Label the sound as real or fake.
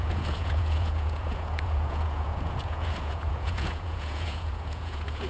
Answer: fake